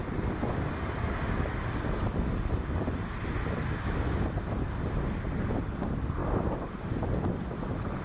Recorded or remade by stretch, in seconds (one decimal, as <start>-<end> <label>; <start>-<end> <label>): 0.0-6.2 recorded; 6.2-7.0 remade; 7.0-8.0 recorded